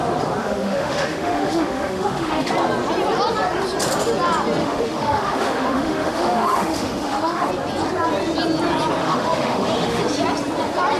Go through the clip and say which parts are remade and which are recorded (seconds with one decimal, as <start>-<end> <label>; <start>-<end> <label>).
0.0-0.4 recorded; 0.4-2.5 remade; 2.5-4.6 recorded; 4.6-7.5 remade; 7.5-9.0 recorded; 9.0-10.0 remade; 10.0-11.0 recorded